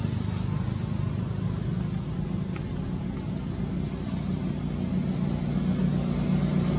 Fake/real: real